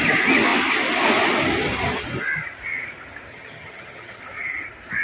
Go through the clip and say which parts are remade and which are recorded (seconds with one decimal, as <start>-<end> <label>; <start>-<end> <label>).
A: 0.0-3.3 recorded; 3.3-4.2 remade; 4.2-5.0 recorded